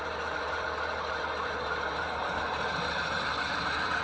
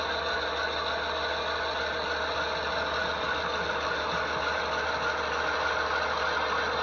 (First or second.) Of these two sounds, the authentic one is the second